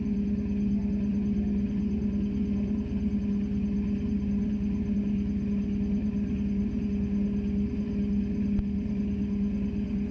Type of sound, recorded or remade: recorded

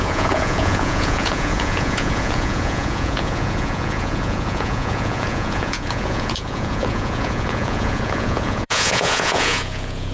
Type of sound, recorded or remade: remade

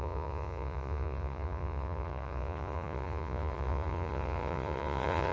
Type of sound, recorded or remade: remade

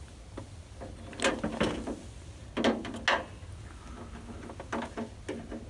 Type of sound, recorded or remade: recorded